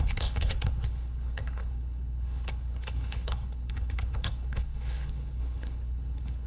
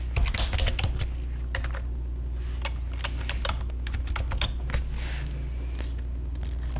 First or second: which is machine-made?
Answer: first